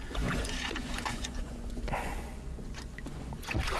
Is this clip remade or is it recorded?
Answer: remade